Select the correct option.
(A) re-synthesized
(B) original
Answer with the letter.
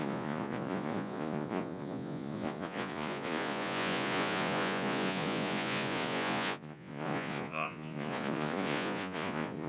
A